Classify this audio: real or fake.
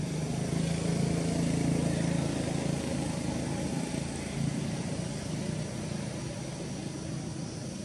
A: real